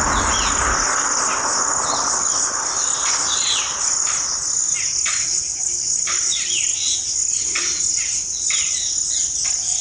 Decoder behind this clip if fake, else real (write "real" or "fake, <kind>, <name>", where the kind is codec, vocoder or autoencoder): real